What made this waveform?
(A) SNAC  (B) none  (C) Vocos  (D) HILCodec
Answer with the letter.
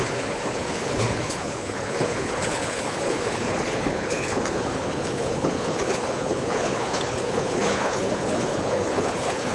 D